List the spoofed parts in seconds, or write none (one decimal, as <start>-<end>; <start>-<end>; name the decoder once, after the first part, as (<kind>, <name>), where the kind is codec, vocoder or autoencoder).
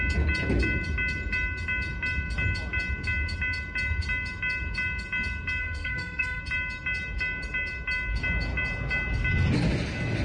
5.6-6.4 (codec, SNAC)